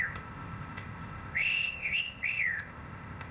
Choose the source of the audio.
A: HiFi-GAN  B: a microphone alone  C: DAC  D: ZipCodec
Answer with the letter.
D